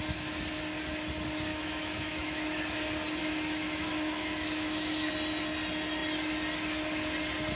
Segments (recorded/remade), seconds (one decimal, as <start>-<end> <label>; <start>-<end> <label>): 0.0-1.5 recorded; 1.5-2.6 remade; 2.6-3.2 recorded; 3.2-5.1 remade; 5.1-7.6 recorded